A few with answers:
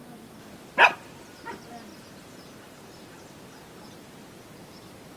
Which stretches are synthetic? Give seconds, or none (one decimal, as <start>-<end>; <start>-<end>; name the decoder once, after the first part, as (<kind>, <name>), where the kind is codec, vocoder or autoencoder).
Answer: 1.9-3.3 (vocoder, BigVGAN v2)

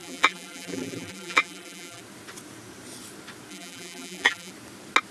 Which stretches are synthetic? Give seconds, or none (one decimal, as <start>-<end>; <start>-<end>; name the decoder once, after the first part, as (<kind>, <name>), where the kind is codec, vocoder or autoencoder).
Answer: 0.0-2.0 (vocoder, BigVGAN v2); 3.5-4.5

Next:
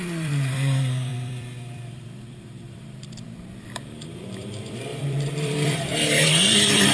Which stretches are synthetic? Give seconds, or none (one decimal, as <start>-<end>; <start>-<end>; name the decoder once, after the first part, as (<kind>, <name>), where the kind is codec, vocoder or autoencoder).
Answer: 0.0-6.9 (vocoder, BigVGAN v2)

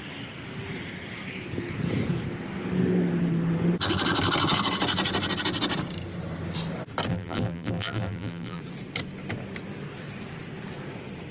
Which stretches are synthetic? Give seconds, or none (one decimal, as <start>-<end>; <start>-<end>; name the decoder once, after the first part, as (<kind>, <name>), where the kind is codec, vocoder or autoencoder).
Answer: 7.1-8.6 (vocoder, BigVGAN v2)

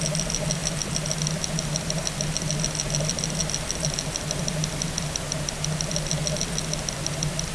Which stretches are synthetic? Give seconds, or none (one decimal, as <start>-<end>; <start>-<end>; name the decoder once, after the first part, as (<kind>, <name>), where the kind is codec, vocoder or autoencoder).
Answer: none